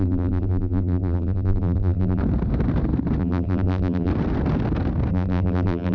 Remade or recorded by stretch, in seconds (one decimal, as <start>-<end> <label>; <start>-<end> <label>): 0.0-2.2 remade; 2.2-3.2 recorded; 3.2-4.1 remade; 4.1-5.1 recorded; 5.1-5.9 remade